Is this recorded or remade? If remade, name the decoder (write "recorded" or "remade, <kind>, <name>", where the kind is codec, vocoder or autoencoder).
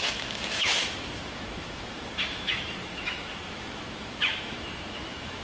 remade, autoencoder, DAC-VAE